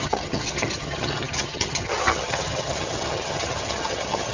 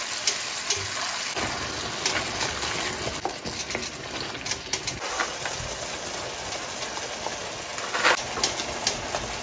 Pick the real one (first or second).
second